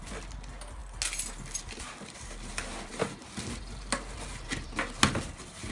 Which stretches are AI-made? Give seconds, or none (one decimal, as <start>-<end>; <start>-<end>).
none